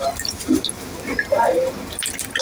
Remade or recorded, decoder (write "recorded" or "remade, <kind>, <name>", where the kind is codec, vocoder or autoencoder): recorded